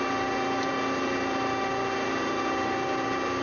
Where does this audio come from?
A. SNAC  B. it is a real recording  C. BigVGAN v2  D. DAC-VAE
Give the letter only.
B